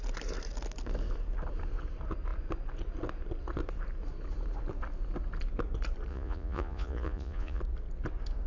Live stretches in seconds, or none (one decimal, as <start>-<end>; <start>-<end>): 0.0-6.1; 7.6-8.5